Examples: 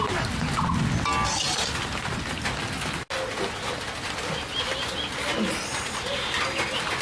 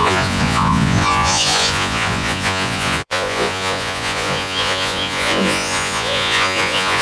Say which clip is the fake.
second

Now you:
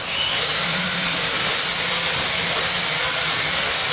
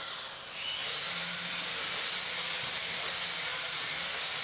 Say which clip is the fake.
first